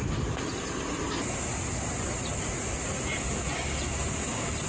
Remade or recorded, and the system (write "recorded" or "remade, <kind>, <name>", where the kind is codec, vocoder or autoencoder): recorded